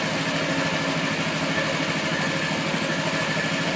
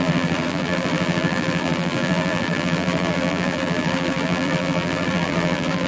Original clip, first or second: first